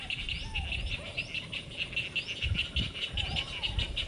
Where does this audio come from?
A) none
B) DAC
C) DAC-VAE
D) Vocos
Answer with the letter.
A